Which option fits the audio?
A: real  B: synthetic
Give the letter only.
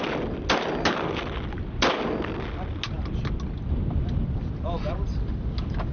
A